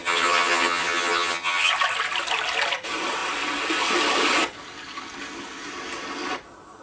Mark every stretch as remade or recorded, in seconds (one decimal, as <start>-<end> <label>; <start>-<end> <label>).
0.0-1.7 remade; 1.7-6.8 recorded